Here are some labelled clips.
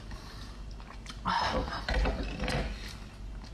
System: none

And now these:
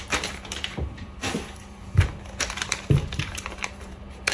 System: vocoder, BigVGAN v2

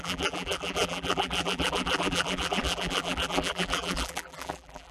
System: vocoder, BigVGAN v2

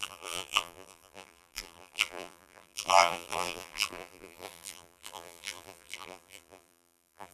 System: vocoder, BigVGAN v2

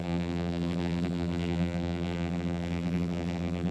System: vocoder, BigVGAN v2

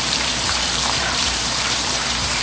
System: vocoder, BigVGAN v2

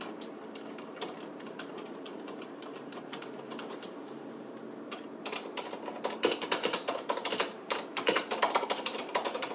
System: vocoder, BigVGAN v2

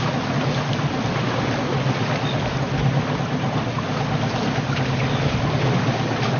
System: none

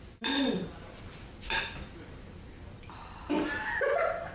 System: vocoder, BigVGAN v2